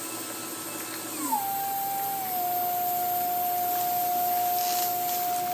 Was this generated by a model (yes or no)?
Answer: no